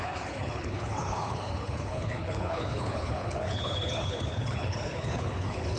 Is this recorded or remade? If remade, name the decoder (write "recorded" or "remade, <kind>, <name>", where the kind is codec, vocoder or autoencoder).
remade, codec, HILCodec